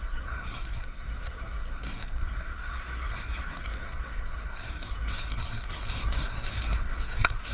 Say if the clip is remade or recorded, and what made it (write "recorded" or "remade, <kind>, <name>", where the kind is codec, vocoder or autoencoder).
remade, codec, SNAC